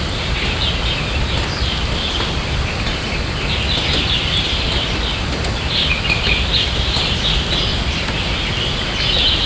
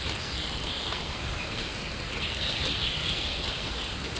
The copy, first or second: second